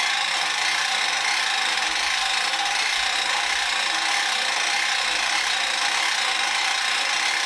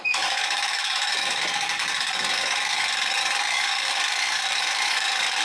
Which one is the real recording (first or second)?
first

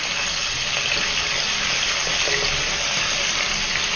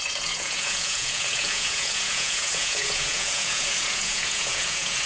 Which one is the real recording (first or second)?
first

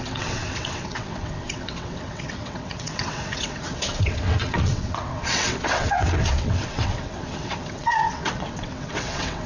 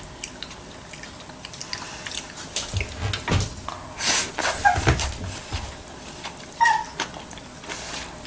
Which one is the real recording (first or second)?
second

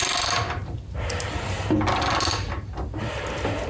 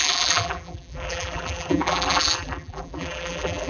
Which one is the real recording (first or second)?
first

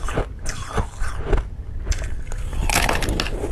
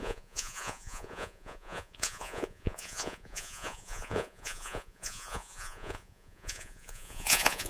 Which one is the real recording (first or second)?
first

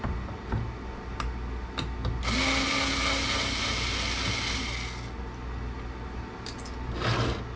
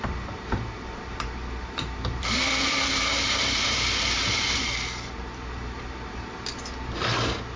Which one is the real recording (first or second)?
first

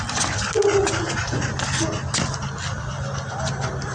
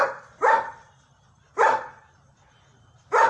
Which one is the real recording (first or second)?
first